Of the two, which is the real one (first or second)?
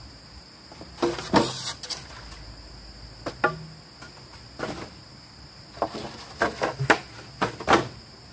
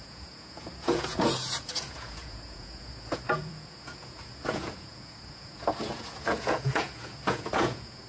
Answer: first